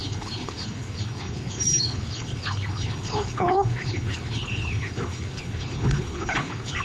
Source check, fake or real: fake